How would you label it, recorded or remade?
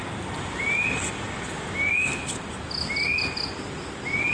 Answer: recorded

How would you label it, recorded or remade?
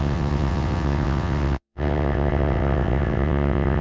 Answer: remade